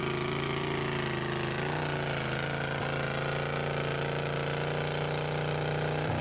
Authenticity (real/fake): real